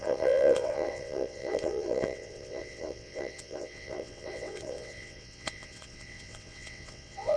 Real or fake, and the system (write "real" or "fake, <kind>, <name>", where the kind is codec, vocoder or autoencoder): fake, vocoder, WaveNeXt